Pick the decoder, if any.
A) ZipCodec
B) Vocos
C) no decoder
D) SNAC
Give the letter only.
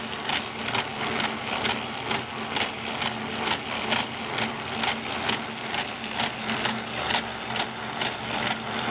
C